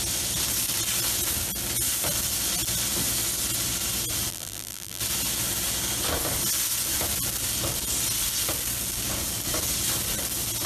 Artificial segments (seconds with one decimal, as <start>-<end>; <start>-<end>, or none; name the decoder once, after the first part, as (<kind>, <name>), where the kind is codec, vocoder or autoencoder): 4.3-5.0 (vocoder, BigVGAN v2)